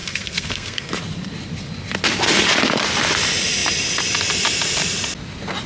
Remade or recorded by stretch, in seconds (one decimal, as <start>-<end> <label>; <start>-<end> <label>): 0.0-0.9 remade; 0.9-5.7 recorded